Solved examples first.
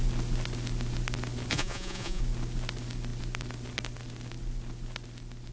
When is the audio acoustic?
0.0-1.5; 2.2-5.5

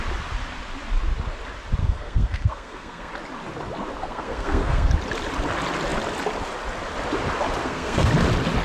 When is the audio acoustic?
0.0-1.8; 3.1-4.0; 4.9-7.6; 8.1-8.6

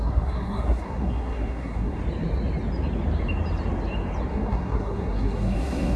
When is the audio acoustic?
2.0-4.3

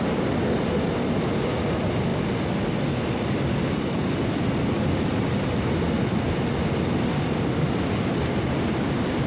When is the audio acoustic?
0.0-9.3

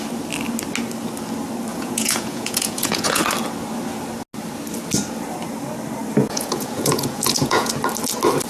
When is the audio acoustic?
0.0-1.7; 3.2-6.2; 7.7-8.5

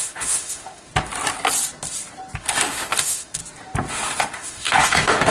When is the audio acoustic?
0.9-2.4; 3.4-3.9

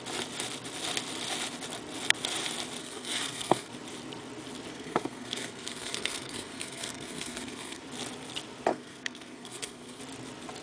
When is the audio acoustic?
0.0-2.8; 3.7-4.7; 7.8-8.7; 10.0-10.6